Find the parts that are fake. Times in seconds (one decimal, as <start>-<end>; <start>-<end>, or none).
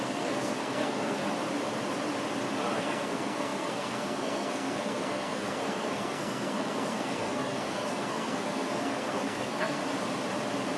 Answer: 0.0-1.2; 2.8-9.8